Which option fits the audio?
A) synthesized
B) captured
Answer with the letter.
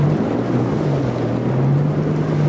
B